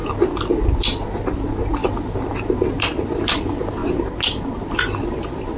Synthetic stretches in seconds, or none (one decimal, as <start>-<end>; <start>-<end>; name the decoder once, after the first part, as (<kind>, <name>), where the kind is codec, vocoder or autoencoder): none